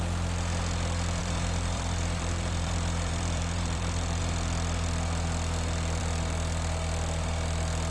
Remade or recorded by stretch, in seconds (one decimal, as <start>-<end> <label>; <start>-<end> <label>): 0.0-1.2 recorded; 1.2-4.2 remade; 4.2-7.9 recorded